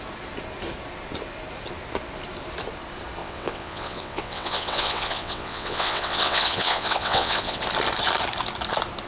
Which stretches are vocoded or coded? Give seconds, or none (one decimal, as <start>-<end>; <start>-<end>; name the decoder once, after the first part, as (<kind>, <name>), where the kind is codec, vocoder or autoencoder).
3.2-7.6 (vocoder, WaveNeXt)